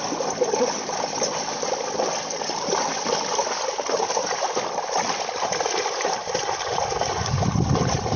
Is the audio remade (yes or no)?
yes